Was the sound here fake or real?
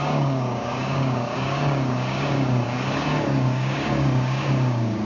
fake